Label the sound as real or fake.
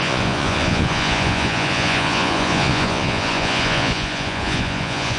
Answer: fake